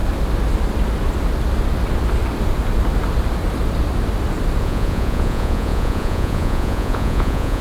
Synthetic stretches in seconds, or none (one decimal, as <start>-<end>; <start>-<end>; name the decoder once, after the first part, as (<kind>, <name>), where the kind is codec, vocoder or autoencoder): 4.6-7.6 (vocoder, Vocos)